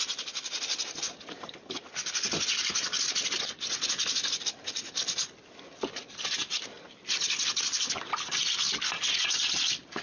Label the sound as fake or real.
real